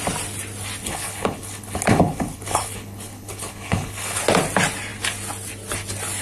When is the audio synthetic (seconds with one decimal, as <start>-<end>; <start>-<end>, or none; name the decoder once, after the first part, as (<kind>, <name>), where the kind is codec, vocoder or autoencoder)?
0.8-4.2 (codec, HILCodec)